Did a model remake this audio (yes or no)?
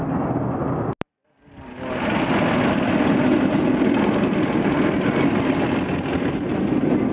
no